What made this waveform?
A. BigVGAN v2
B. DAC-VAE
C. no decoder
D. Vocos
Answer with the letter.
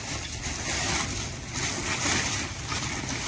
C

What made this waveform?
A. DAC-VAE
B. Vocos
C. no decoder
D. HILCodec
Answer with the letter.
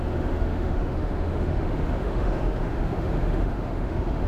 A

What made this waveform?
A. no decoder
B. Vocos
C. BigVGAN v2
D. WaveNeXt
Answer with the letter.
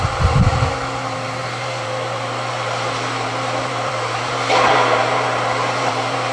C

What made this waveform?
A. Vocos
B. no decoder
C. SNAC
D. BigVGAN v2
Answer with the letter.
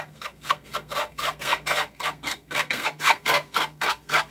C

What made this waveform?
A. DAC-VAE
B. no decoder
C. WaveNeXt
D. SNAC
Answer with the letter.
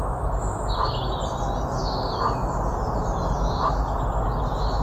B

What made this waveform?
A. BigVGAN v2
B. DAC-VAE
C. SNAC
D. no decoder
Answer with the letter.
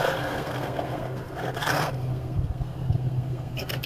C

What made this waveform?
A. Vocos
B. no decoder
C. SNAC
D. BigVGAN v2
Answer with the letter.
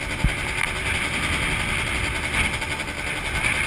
B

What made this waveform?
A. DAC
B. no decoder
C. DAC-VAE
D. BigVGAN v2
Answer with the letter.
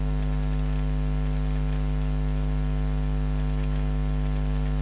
B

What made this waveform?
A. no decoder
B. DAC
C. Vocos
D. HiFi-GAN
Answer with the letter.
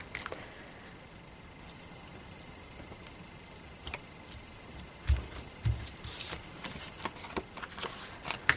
A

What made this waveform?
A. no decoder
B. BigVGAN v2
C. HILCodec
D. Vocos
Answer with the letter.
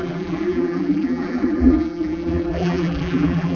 B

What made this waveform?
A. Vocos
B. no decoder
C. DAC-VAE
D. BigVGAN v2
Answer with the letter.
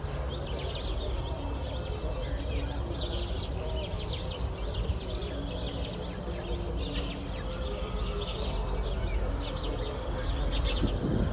B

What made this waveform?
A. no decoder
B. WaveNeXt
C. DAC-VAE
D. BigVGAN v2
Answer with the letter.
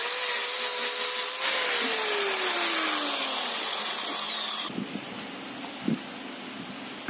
A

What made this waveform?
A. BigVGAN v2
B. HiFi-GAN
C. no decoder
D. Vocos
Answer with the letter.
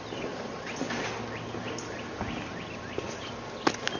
C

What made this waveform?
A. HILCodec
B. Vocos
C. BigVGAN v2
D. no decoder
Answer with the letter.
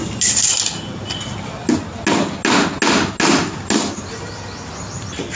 D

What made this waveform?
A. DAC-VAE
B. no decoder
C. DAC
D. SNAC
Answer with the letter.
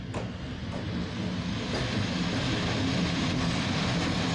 B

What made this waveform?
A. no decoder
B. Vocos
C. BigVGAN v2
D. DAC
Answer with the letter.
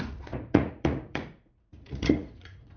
B